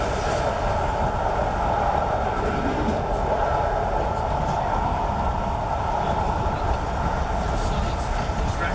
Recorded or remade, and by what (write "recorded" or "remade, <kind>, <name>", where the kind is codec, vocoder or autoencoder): recorded